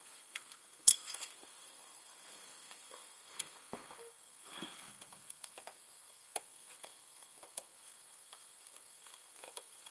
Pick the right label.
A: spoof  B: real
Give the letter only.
A